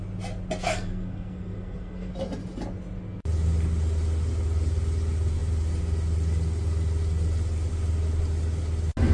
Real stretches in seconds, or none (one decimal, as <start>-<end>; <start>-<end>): 0.0-0.6; 2.1-9.1